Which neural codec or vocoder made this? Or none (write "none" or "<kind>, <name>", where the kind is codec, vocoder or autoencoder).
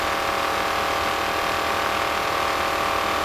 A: none